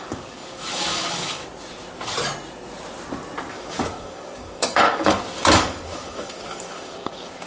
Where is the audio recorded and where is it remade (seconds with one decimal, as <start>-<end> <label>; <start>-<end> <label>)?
0.0-1.4 remade; 1.4-3.5 recorded; 3.5-7.5 remade